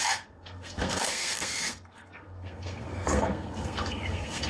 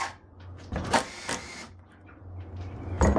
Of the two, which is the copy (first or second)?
first